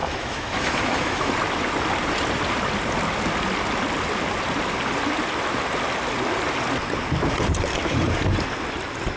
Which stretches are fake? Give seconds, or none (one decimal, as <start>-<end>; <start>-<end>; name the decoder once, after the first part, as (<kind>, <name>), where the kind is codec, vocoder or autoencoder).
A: 0.0-1.3 (autoencoder, DAC-VAE)